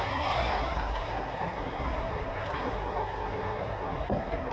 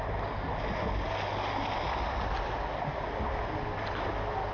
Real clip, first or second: second